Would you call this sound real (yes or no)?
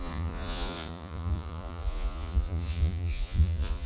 no